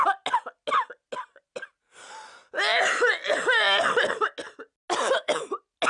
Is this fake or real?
real